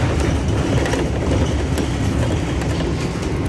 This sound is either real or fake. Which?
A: real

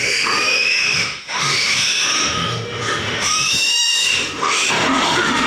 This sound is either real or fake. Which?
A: fake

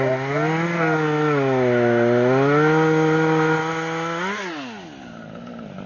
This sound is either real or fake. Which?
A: real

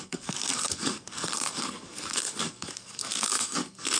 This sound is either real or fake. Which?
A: fake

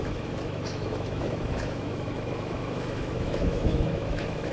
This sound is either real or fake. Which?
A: fake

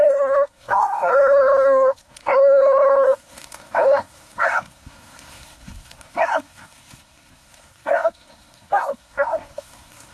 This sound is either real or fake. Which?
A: fake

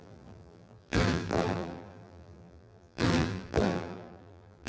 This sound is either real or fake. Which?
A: fake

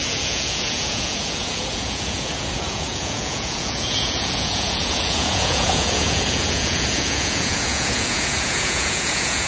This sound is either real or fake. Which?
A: fake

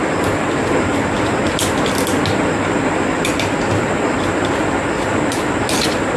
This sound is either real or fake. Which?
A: real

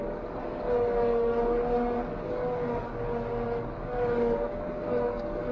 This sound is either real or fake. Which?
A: fake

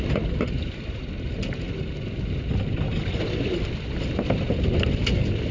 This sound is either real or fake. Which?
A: real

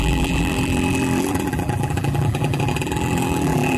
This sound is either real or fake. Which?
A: fake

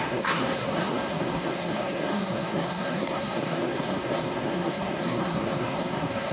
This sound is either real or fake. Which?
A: fake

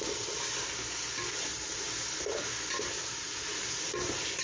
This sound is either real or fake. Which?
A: real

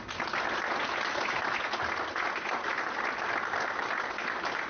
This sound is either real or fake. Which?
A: real